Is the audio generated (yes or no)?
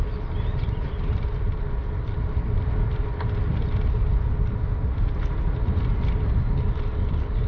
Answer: no